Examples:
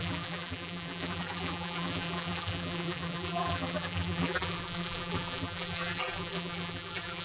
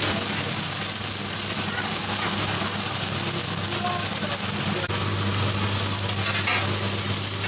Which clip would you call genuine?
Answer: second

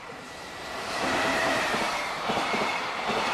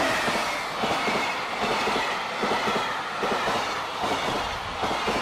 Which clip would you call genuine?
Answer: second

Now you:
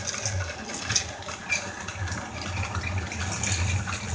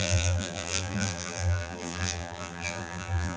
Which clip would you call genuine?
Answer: first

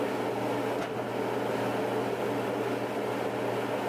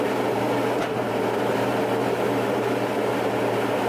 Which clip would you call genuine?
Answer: first